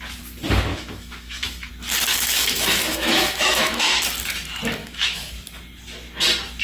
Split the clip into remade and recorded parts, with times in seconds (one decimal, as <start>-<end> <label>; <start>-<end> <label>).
0.0-0.7 recorded; 0.7-1.7 remade; 1.7-2.1 recorded; 2.1-4.0 remade; 4.0-4.8 recorded; 4.8-5.3 remade; 5.3-6.6 recorded